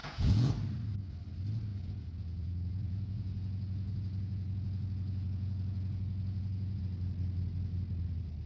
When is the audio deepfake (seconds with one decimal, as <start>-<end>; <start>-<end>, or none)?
0.0-0.5; 1.7-6.8